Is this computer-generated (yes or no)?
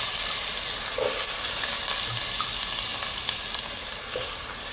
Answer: no